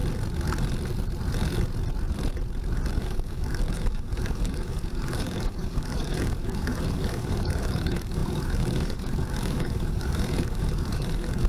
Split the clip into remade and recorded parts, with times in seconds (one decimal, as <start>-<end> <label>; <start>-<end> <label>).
0.0-2.9 recorded; 2.9-11.5 remade